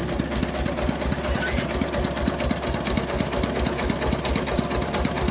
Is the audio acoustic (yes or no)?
yes